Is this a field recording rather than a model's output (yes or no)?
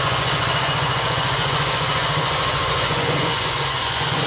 no